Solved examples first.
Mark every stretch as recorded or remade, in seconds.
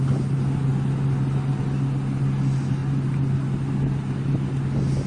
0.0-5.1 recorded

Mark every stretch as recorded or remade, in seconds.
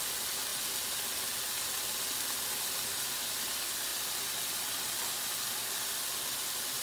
0.0-6.8 recorded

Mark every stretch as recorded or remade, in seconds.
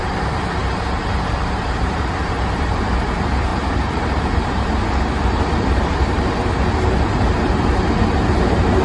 0.0-8.8 remade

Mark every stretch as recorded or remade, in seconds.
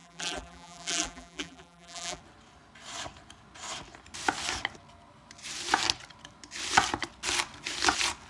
0.0-2.2 remade; 2.2-8.3 recorded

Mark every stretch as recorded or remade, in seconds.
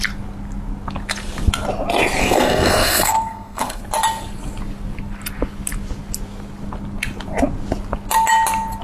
0.0-2.2 recorded; 2.2-3.8 remade; 3.8-8.8 recorded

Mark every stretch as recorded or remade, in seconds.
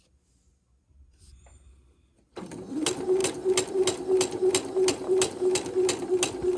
0.0-6.6 recorded